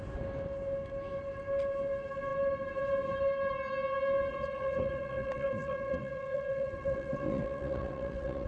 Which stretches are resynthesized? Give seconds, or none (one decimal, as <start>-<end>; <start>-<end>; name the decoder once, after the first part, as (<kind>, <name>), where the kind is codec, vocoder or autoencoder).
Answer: 4.3-8.5 (vocoder, WaveNeXt)